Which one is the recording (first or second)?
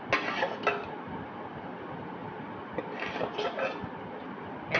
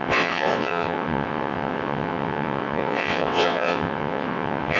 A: first